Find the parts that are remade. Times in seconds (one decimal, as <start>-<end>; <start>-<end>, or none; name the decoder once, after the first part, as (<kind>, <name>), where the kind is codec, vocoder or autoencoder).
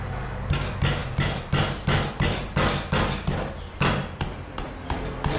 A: none